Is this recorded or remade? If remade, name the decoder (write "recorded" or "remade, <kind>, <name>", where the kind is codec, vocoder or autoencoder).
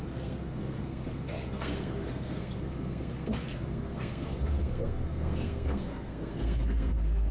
remade, codec, SNAC